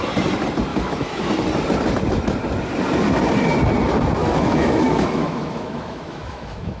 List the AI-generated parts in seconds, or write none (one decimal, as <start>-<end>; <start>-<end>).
0.7-1.3; 4.2-6.8